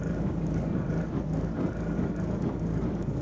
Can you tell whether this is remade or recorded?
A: remade